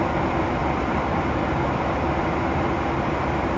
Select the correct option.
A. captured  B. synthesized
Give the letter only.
A